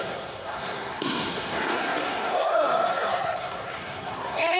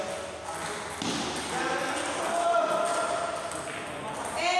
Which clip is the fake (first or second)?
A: first